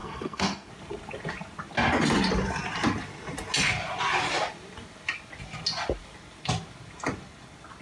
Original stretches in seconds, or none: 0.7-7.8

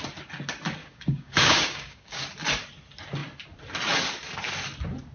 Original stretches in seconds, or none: 0.0-0.8; 2.2-5.1